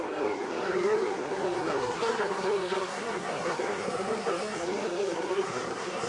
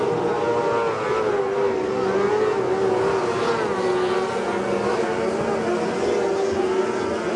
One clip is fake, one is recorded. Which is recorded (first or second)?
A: second